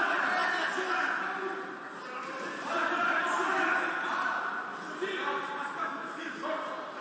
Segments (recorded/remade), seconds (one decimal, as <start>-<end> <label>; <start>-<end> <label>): 0.0-5.8 recorded; 5.8-6.4 remade; 6.4-7.0 recorded